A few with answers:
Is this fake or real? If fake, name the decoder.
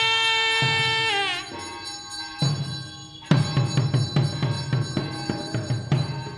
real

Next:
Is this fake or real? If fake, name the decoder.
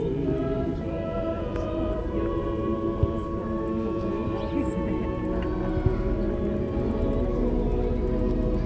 real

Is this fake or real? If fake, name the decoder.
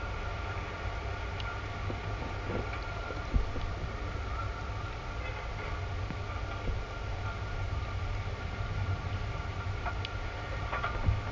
real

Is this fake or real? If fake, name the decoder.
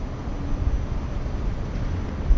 real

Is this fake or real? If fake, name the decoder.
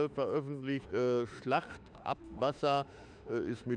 fake, autoencoder, DAC-VAE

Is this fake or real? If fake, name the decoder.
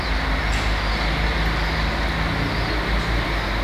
real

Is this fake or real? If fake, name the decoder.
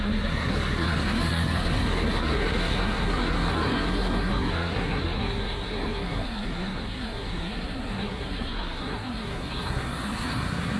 fake, codec, SNAC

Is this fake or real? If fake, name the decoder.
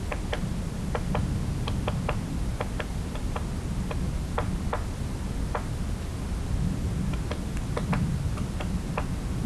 real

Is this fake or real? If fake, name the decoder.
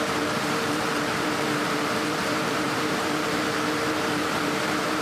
fake, vocoder, BigVGAN v2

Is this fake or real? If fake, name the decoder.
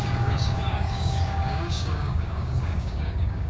fake, codec, DAC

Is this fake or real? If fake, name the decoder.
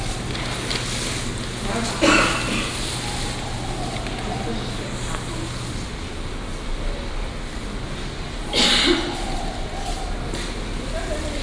real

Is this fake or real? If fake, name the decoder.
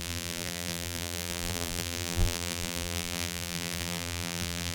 fake, vocoder, BigVGAN v2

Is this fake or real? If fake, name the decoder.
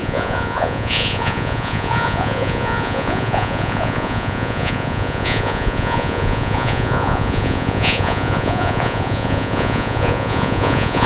fake, vocoder, Vocos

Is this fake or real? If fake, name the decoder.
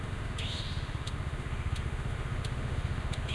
fake, autoencoder, DAC-VAE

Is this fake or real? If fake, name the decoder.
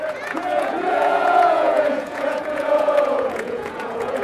fake, vocoder, Vocos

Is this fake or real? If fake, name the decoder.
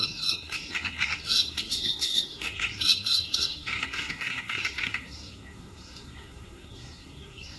fake, codec, SNAC